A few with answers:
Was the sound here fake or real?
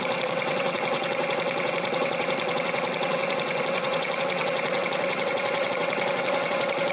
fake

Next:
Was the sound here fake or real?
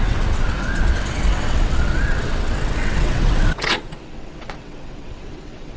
fake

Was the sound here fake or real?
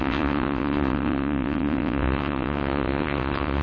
fake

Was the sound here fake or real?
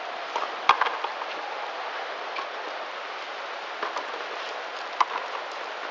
real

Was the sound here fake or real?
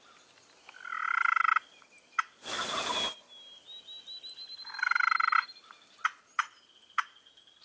real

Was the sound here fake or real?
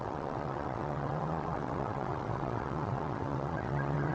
fake